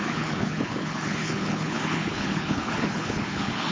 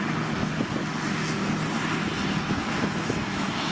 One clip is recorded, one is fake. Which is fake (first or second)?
first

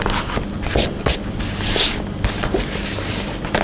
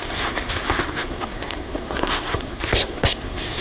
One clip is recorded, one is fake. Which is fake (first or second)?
second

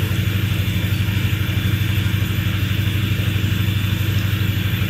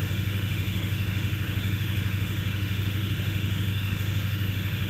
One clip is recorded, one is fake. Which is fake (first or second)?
second